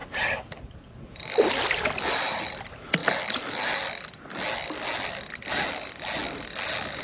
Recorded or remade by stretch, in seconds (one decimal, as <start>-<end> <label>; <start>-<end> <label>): 0.0-7.0 recorded